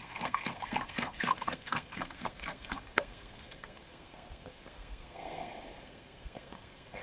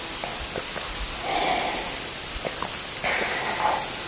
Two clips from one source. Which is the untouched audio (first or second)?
second